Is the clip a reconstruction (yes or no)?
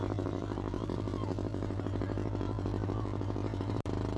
yes